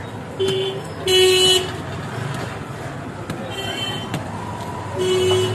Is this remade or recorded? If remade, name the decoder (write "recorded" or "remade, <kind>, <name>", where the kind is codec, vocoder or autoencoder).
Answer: recorded